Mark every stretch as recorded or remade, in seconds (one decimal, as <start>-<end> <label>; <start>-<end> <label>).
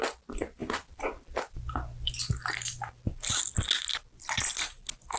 0.0-5.2 recorded